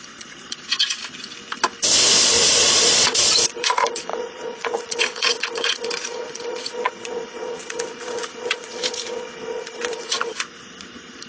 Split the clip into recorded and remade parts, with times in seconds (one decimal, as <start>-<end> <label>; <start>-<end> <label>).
0.0-1.0 remade; 1.0-2.2 recorded; 2.2-11.3 remade